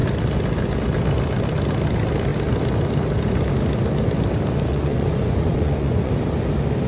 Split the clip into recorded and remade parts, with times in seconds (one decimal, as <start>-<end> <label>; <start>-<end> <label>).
0.0-4.7 recorded; 4.7-6.1 remade; 6.1-6.9 recorded